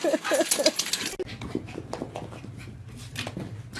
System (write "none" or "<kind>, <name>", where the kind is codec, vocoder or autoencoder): none